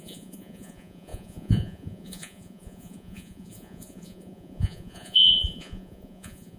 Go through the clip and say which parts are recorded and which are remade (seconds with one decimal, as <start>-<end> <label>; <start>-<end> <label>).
0.0-6.6 remade